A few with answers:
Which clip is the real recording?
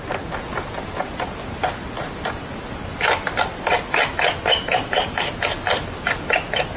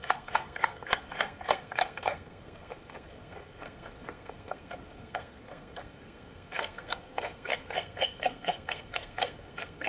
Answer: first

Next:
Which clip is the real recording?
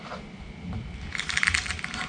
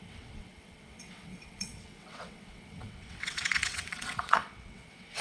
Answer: first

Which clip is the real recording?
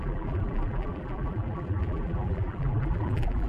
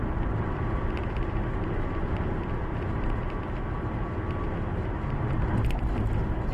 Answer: second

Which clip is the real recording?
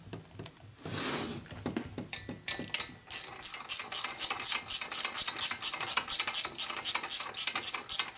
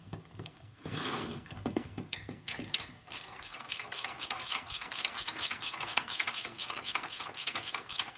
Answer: first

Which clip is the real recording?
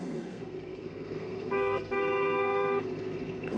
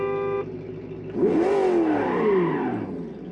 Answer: second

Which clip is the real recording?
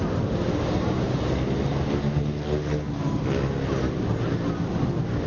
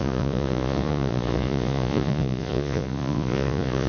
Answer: first